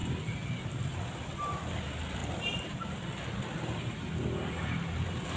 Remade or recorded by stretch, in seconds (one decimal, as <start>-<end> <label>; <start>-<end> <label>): 0.0-5.4 recorded

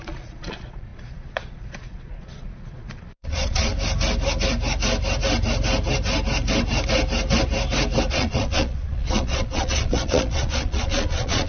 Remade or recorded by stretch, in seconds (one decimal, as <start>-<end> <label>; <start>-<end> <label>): 0.0-3.7 remade; 3.7-8.1 recorded; 8.1-11.5 remade

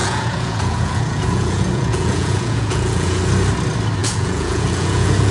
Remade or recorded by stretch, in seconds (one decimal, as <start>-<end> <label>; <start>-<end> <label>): 0.0-3.2 remade; 3.2-4.0 recorded; 4.0-5.3 remade

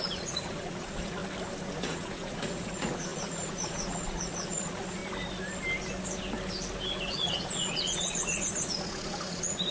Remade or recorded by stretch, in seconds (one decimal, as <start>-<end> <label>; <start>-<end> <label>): 0.0-1.2 remade; 1.2-1.8 recorded; 1.8-5.0 remade; 5.0-7.1 recorded; 7.1-9.7 remade

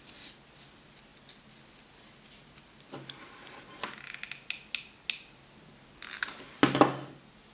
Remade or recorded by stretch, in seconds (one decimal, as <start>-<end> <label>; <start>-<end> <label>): 0.0-7.5 recorded

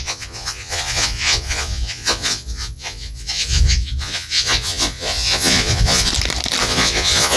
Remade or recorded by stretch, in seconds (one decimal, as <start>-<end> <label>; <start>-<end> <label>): 0.0-6.1 remade; 6.1-6.6 recorded; 6.6-7.4 remade